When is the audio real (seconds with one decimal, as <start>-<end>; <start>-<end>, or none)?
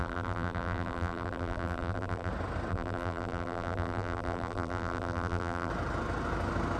2.3-2.7; 5.7-6.8